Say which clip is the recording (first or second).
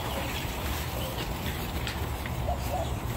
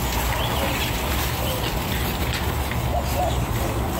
second